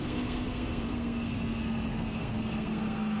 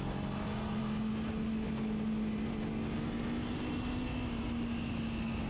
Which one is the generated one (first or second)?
first